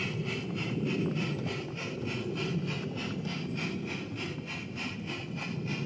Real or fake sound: real